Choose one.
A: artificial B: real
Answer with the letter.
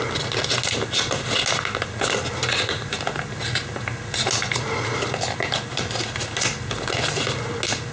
B